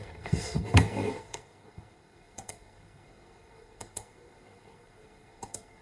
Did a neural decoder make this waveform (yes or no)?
yes